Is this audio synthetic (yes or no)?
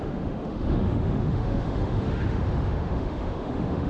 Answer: yes